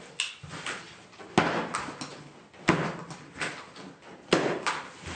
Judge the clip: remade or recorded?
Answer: recorded